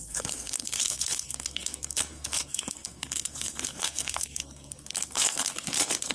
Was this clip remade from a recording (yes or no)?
yes